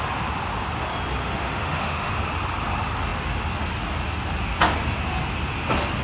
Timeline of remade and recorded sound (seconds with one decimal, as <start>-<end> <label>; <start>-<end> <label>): 0.0-1.2 recorded; 1.2-2.1 remade; 2.1-6.0 recorded